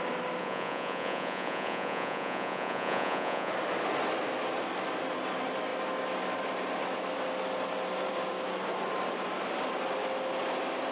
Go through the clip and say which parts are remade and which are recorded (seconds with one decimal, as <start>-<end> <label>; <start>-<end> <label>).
0.0-0.4 recorded; 0.4-3.5 remade; 3.5-10.9 recorded